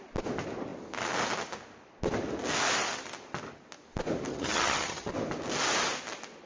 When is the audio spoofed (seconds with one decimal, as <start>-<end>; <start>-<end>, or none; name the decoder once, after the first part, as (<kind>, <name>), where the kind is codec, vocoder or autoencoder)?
4.3-5.1 (vocoder, HiFi-GAN)

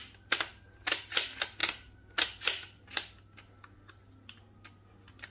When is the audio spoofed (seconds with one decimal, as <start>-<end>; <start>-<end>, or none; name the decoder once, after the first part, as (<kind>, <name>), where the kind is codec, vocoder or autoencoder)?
none

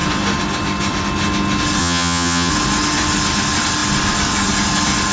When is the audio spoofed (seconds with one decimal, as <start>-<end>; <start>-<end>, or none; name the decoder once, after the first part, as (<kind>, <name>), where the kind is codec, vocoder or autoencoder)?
1.8-2.5 (vocoder, HiFi-GAN)

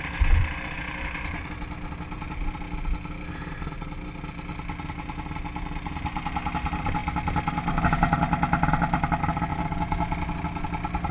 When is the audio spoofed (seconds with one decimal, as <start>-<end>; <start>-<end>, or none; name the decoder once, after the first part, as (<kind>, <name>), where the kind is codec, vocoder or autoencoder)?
none

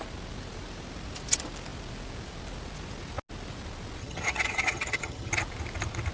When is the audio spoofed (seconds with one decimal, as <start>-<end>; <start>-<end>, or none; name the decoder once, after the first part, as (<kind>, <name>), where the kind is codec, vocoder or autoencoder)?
4.0-5.3 (vocoder, HiFi-GAN)